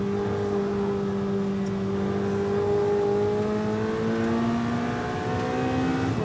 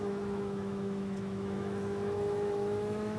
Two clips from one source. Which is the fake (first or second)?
second